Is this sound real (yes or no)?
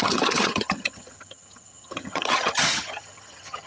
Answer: no